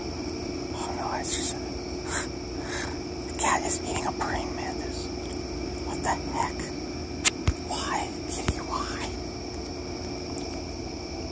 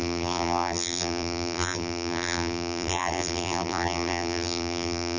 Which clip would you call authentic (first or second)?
first